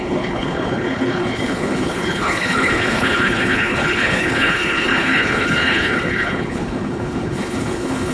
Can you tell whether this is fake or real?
fake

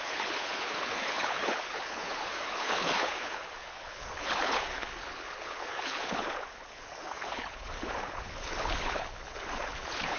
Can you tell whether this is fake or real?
fake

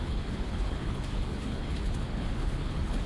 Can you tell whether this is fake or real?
fake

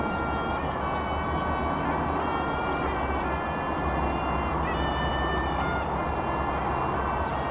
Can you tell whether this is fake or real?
real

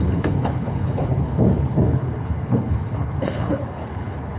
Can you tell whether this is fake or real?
fake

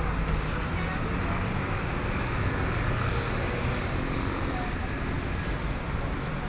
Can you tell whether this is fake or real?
real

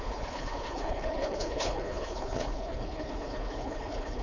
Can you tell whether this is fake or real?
fake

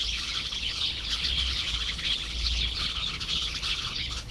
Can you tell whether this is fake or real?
fake